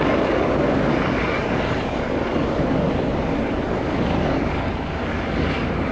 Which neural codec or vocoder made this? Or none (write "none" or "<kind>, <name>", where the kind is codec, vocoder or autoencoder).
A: codec, DAC